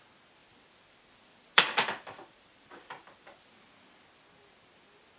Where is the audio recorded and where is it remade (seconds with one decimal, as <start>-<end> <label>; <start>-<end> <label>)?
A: 0.0-0.4 recorded; 0.4-3.5 remade; 3.5-5.2 recorded